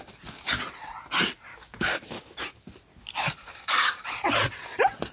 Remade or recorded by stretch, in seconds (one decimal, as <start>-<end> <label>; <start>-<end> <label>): 0.0-1.5 recorded; 1.5-2.4 remade; 2.4-2.9 recorded; 2.9-4.0 remade; 4.0-5.1 recorded